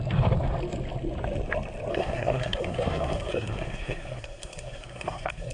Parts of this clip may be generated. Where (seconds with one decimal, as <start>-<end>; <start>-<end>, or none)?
1.9-5.5